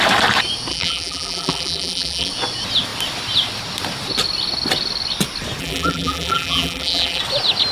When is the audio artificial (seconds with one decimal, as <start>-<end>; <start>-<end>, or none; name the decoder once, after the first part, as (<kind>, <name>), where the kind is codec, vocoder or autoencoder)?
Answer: 0.7-2.3 (vocoder, BigVGAN v2); 5.6-7.2